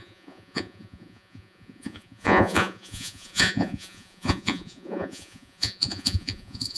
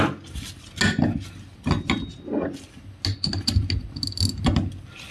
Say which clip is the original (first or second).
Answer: second